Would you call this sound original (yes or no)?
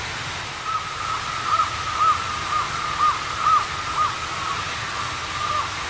yes